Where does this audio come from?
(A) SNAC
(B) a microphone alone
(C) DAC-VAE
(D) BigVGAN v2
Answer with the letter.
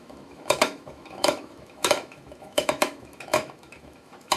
C